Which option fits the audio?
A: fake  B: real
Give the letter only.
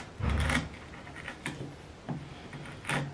B